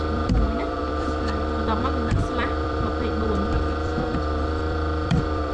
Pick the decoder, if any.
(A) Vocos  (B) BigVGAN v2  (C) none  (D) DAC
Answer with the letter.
B